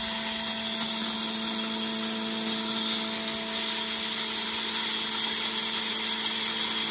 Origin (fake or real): real